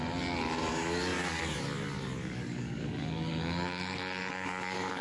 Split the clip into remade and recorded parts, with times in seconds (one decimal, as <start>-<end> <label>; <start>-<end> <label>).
0.0-0.7 recorded; 0.7-1.4 remade; 1.4-2.2 recorded; 2.2-5.0 remade